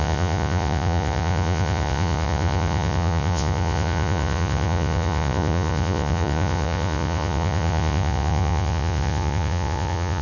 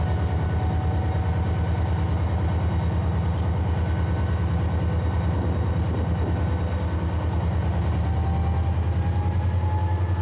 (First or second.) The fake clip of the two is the first